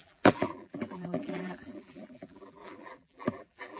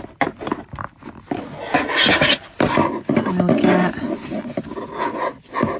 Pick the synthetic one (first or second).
first